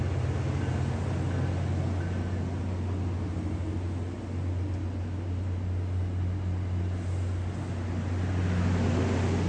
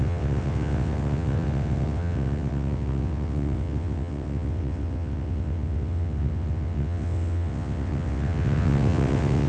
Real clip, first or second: first